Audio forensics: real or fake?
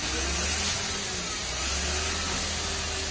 real